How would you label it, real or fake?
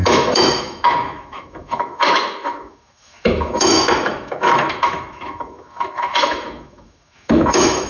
fake